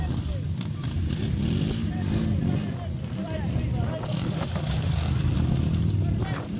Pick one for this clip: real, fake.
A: real